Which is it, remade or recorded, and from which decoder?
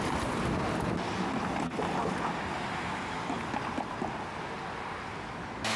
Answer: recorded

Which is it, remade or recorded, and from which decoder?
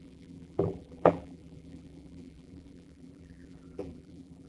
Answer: remade, vocoder, BigVGAN v2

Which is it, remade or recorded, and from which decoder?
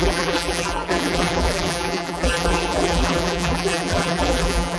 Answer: remade, vocoder, BigVGAN v2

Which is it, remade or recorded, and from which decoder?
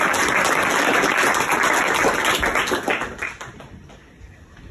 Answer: recorded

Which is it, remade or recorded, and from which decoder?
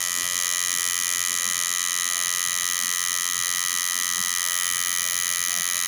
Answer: recorded